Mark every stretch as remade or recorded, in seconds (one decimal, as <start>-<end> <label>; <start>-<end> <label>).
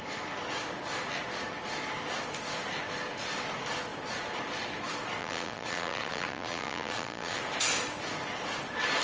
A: 0.0-5.2 recorded; 5.2-7.4 remade; 7.4-9.0 recorded